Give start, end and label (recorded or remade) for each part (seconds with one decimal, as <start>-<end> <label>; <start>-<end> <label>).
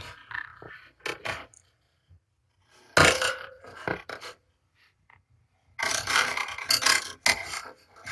0.0-8.1 recorded